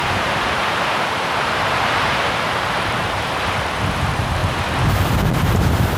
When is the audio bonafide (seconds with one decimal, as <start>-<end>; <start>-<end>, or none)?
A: 4.4-5.3